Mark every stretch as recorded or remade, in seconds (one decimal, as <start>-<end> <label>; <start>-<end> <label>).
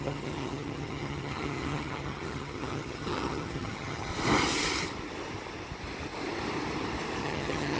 0.0-4.1 remade; 4.1-7.2 recorded; 7.2-7.8 remade